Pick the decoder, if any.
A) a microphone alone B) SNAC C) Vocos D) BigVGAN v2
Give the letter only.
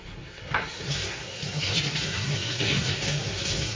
B